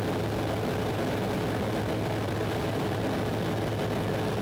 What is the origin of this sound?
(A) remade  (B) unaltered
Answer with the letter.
B